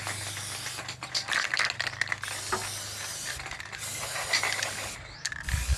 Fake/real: real